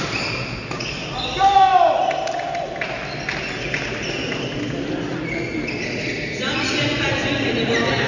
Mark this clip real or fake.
real